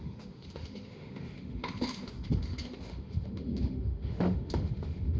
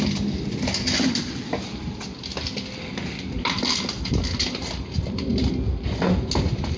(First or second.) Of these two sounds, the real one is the second